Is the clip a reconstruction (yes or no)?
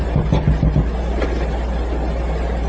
no